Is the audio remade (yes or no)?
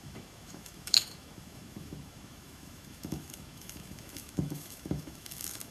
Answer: yes